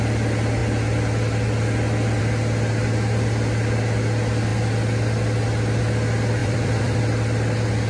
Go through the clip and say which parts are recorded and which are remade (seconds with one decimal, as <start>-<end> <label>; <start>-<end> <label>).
0.0-6.4 recorded; 6.4-7.0 remade; 7.0-7.9 recorded